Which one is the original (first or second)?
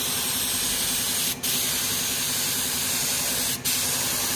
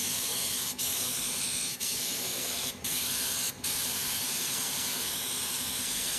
first